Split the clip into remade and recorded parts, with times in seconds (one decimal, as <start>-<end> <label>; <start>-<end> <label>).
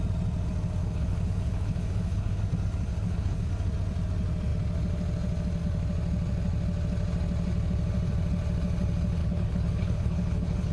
0.0-0.8 recorded; 0.8-2.4 remade; 2.4-2.9 recorded; 2.9-3.5 remade; 3.5-9.2 recorded; 9.2-10.7 remade